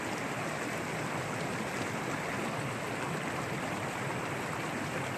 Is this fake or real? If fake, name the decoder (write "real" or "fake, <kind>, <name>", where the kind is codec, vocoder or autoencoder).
real